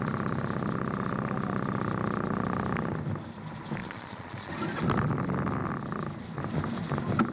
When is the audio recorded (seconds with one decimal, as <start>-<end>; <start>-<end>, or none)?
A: 0.0-3.8; 4.5-7.3